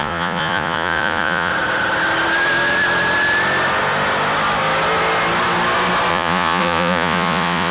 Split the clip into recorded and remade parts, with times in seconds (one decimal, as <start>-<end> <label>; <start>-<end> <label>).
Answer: 0.0-1.5 remade; 1.5-6.1 recorded; 6.1-7.7 remade